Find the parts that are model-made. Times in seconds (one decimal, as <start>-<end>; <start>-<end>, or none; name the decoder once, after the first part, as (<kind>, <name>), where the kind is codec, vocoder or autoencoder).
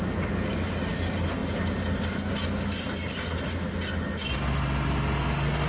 none